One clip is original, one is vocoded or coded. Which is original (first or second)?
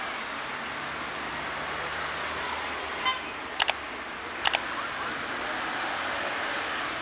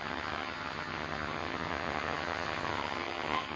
first